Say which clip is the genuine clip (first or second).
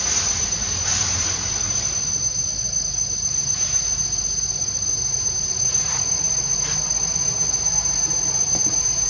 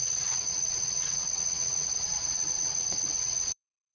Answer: first